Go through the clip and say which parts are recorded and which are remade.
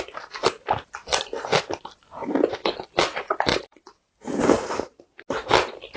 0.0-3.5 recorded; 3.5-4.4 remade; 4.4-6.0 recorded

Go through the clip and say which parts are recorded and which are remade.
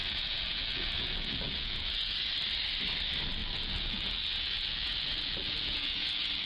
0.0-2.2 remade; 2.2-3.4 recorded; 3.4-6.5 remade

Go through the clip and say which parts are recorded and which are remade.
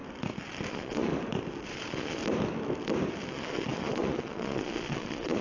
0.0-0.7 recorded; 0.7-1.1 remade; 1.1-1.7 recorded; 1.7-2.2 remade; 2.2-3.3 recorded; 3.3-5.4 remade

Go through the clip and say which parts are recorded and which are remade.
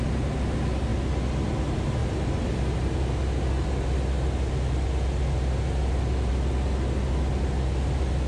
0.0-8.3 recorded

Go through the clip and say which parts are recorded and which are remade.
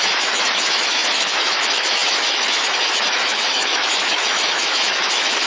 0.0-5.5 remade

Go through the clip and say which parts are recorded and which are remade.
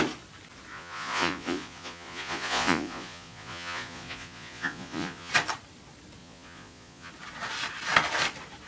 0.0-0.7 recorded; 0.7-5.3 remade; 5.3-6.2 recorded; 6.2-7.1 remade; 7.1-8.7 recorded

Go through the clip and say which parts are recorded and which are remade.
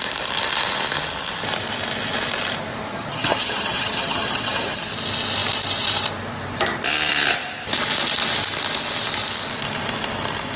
0.0-2.9 recorded; 2.9-4.8 remade; 4.8-10.6 recorded